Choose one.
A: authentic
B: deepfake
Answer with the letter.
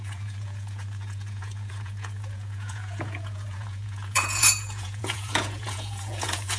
B